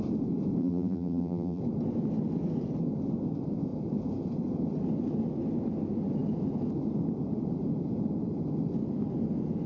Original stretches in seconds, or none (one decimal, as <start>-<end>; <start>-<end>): 0.0-0.6; 1.6-9.7